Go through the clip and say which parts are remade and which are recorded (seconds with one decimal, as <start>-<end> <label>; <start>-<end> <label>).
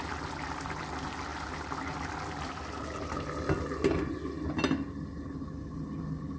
0.0-6.4 recorded